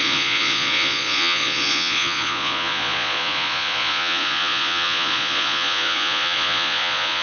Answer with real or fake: fake